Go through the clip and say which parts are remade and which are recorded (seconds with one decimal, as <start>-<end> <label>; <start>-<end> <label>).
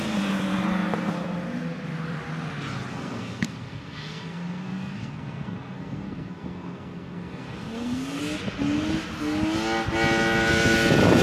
0.0-2.9 recorded; 2.9-8.2 remade; 8.2-11.2 recorded